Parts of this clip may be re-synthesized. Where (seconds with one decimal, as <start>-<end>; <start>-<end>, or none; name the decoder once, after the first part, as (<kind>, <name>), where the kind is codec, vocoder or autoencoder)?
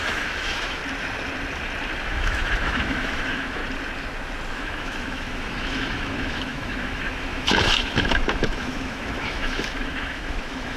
0.0-0.8 (autoencoder, DAC-VAE); 2.0-3.6; 4.5-10.8